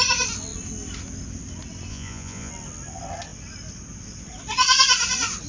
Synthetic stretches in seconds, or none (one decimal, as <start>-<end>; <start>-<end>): 1.9-2.5